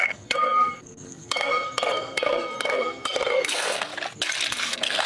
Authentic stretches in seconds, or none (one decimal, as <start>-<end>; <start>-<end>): 3.9-4.5